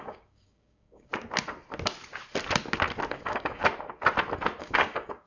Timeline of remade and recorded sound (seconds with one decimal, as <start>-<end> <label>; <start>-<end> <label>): 0.0-1.1 remade; 1.1-3.1 recorded; 3.1-3.6 remade; 3.6-4.6 recorded; 4.6-5.3 remade